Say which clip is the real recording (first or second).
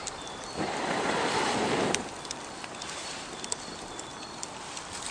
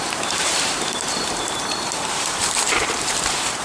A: first